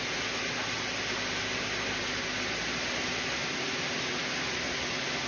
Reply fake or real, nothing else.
real